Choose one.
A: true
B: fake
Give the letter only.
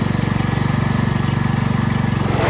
A